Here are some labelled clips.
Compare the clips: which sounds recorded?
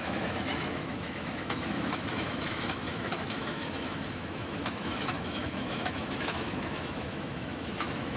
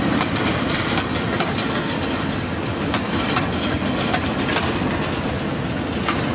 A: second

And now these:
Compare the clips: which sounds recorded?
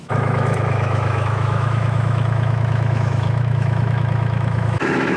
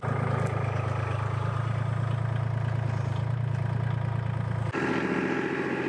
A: second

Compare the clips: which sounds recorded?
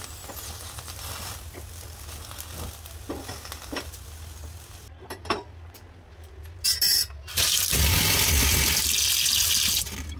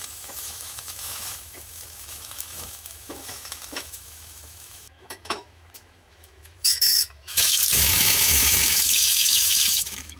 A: first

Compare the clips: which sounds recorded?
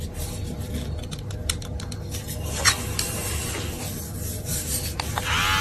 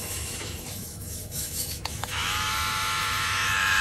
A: first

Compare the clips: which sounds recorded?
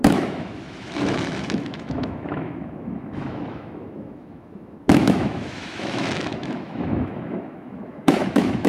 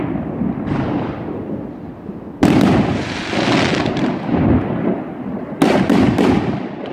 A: second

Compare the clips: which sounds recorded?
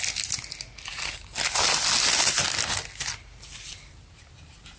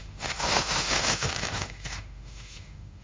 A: first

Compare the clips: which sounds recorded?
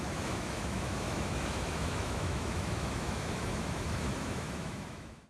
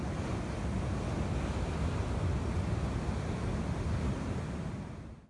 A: second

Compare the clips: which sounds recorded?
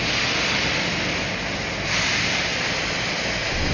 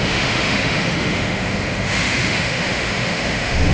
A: first